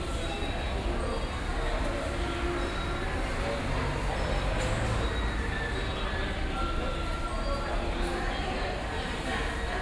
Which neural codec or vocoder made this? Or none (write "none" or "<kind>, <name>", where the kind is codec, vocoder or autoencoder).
none